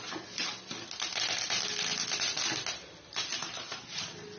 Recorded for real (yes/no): yes